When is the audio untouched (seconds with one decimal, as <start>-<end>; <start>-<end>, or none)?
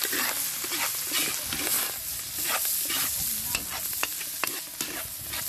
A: 0.0-3.9; 4.5-5.5